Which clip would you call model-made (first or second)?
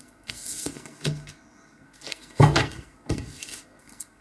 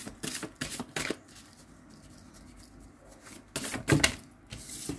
first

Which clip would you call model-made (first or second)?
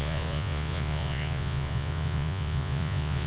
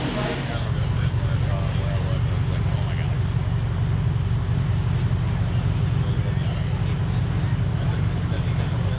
first